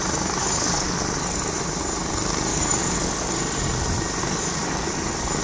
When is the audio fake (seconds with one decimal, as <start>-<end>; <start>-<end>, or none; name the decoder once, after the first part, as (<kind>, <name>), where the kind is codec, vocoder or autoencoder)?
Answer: 0.4-1.0 (codec, DAC); 2.5-3.3; 4.2-4.9